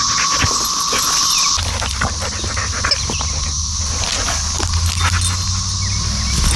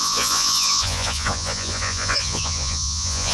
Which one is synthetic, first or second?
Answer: second